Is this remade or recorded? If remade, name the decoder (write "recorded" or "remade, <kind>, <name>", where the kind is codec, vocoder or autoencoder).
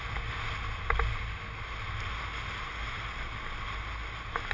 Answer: recorded